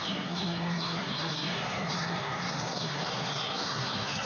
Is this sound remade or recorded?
remade